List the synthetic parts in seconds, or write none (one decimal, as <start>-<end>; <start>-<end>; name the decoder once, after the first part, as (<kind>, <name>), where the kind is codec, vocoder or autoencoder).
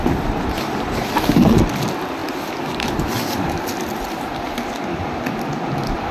none